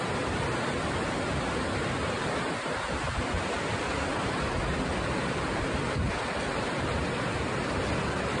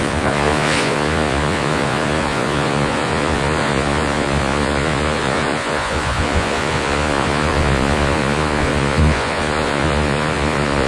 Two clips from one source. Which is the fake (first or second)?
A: second